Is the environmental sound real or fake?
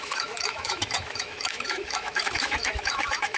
fake